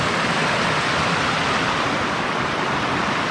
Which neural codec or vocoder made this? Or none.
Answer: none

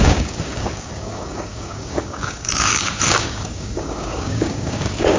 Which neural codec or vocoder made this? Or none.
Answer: codec, DAC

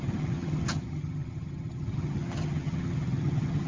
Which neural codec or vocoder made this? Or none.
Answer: vocoder, HiFi-GAN